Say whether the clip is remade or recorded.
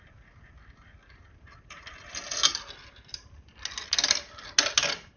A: recorded